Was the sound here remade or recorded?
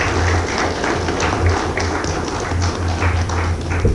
recorded